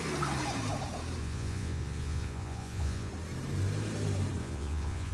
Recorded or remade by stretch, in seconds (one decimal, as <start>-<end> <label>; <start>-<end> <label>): 0.0-1.2 recorded; 1.2-3.1 remade; 3.1-4.4 recorded; 4.4-5.1 remade